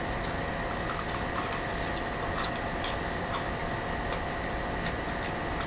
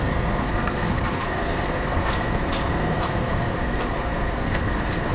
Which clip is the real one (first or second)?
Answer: first